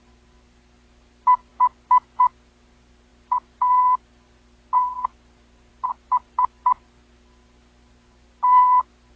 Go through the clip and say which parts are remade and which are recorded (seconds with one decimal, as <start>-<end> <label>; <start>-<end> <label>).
0.0-9.2 recorded